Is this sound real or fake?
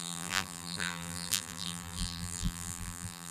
fake